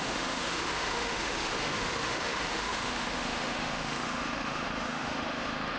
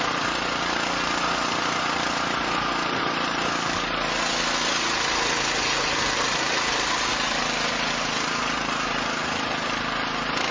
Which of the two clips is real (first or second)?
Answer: second